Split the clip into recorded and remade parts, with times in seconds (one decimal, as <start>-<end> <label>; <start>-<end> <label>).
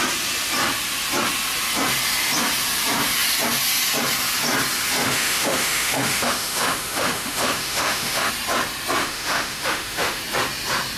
0.0-5.0 recorded; 5.0-8.3 remade; 8.3-9.0 recorded; 9.0-10.2 remade; 10.2-11.0 recorded